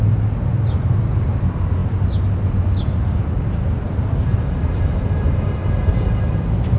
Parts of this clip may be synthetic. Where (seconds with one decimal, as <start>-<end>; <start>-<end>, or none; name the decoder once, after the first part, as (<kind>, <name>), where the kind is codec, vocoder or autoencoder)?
none